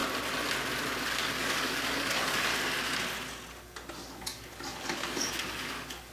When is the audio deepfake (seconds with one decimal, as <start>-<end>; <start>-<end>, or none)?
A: 1.0-2.5; 3.9-6.1